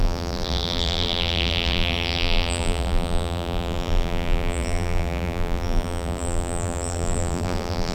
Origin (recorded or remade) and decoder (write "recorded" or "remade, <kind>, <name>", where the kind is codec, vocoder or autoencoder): remade, vocoder, BigVGAN v2